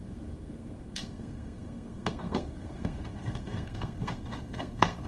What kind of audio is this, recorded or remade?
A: remade